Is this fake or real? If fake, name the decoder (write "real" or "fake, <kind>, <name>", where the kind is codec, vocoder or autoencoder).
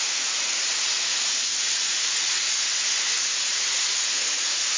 fake, vocoder, Vocos